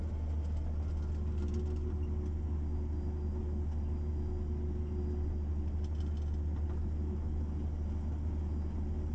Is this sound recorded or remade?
recorded